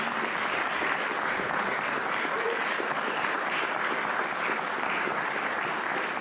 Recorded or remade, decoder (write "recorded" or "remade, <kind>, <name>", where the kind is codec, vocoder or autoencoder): recorded